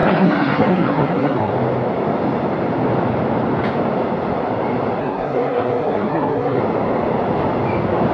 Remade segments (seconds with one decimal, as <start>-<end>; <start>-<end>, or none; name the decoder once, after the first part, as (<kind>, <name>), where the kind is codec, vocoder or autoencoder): 0.0-1.5 (codec, SNAC); 5.0-6.6